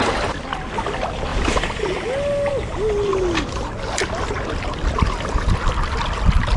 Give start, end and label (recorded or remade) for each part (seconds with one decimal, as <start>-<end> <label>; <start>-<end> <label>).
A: 0.0-6.6 recorded